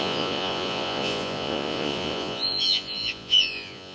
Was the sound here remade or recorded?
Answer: remade